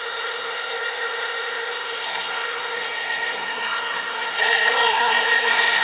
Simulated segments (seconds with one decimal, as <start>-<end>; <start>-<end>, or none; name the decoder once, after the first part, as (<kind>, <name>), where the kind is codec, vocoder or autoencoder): 0.0-5.8 (codec, SNAC)